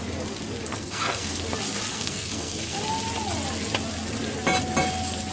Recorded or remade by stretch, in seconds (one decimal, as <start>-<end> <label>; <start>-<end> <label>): 0.0-0.7 recorded; 0.7-1.4 remade; 1.4-1.9 recorded; 1.9-2.8 remade; 2.8-5.3 recorded